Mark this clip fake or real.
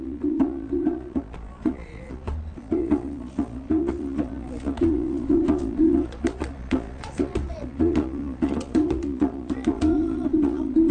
fake